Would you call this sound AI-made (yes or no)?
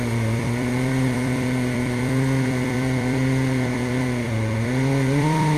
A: yes